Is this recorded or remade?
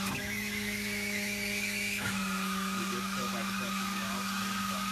remade